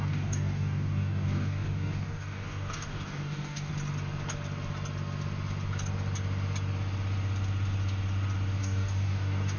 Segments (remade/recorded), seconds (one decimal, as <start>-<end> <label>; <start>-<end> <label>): 0.0-3.7 remade; 3.7-8.6 recorded; 8.6-9.6 remade